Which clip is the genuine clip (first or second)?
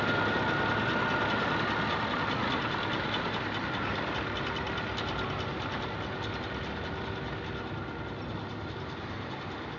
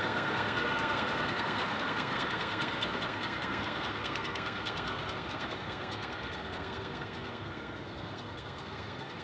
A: first